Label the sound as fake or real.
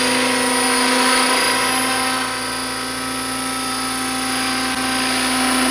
real